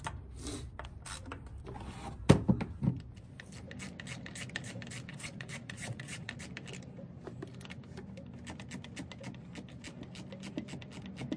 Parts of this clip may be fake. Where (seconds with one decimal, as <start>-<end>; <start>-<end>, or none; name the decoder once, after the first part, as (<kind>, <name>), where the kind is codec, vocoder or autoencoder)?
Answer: 5.1-6.3 (vocoder, Vocos)